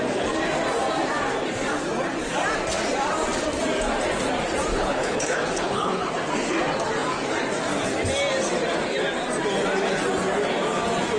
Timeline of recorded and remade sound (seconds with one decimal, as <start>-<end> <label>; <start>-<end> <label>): 0.0-4.7 recorded; 4.7-6.1 remade; 6.1-11.2 recorded